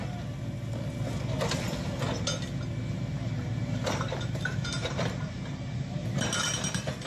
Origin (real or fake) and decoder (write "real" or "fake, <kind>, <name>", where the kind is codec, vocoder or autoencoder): real